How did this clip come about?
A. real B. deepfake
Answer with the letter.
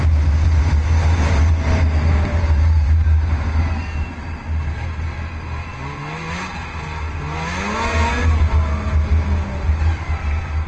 A